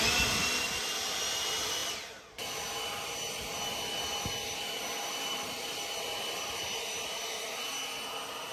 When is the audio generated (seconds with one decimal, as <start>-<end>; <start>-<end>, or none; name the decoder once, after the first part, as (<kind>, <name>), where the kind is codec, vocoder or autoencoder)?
none